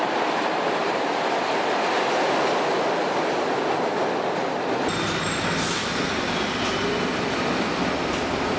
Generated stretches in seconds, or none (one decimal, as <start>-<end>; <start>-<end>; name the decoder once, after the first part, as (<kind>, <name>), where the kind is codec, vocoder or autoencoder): none